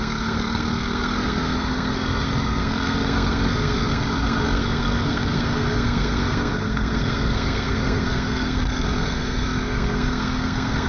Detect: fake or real fake